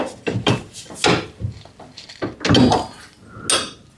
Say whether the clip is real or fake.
real